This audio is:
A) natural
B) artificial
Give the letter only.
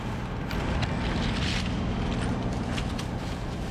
A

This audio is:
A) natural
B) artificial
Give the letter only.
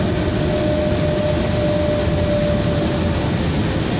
A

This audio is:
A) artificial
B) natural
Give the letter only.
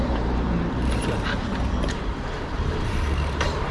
A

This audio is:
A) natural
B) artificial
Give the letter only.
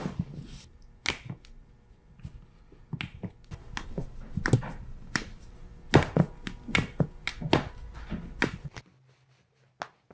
A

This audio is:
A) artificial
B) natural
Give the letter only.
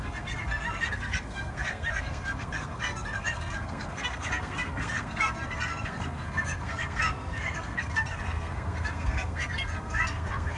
A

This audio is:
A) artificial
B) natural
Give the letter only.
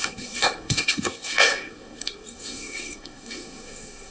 A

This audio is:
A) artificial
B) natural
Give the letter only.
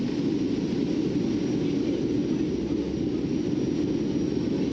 B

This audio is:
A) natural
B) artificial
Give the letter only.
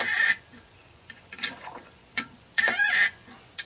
B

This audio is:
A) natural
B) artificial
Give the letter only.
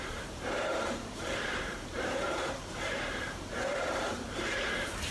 B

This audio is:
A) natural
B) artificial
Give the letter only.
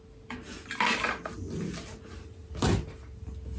A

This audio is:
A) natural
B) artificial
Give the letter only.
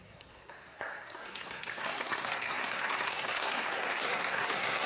B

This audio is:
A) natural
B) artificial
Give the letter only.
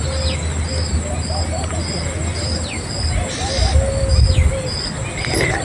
A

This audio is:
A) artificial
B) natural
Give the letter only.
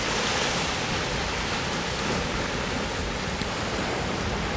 A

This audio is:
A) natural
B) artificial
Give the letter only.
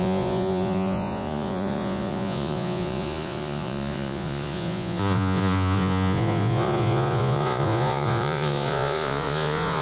B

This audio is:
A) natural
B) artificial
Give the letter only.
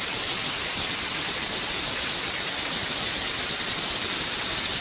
A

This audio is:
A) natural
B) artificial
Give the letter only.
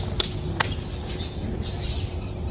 A